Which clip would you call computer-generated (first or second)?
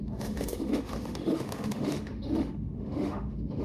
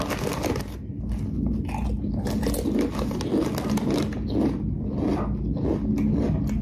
first